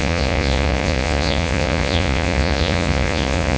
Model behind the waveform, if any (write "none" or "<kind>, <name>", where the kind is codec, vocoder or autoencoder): vocoder, Vocos